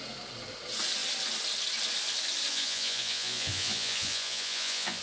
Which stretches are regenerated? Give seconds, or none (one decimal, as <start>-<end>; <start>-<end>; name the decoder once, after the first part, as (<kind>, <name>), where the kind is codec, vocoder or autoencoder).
2.5-5.0 (vocoder, Vocos)

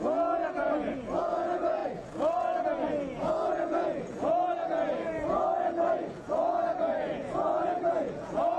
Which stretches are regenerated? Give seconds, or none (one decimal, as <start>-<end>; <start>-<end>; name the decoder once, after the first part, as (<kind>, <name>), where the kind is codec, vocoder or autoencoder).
0.0-8.6 (vocoder, Vocos)

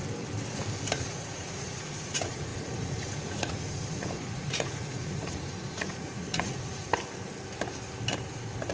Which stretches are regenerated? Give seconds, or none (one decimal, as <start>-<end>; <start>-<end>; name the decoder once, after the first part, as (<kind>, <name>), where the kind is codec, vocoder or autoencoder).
0.9-6.9 (vocoder, Vocos)